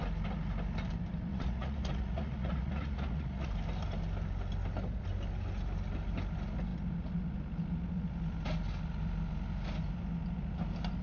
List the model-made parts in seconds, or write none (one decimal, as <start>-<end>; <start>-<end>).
1.3-3.5